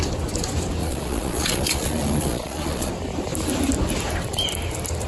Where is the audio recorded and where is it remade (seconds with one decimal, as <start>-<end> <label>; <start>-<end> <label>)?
0.0-0.8 recorded; 0.8-2.9 remade; 2.9-5.1 recorded